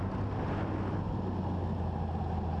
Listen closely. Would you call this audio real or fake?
real